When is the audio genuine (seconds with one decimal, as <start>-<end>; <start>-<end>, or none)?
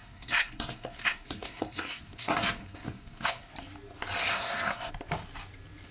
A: 3.5-4.3; 4.9-5.9